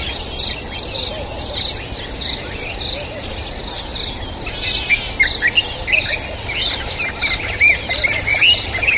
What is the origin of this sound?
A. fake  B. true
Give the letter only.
B